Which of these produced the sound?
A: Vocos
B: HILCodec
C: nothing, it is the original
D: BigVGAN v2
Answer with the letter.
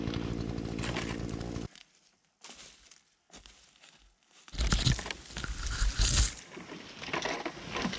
C